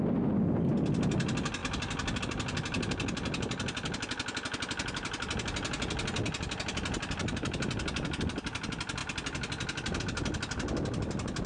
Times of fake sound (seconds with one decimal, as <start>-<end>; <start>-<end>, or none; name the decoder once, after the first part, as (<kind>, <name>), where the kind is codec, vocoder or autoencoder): none